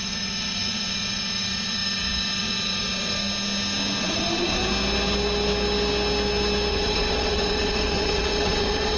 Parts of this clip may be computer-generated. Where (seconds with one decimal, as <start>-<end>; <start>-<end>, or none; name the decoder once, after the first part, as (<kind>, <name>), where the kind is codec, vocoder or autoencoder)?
0.0-3.2 (vocoder, Vocos); 4.0-4.6; 6.7-9.0